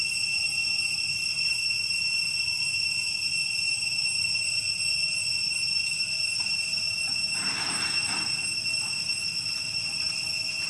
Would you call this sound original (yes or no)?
yes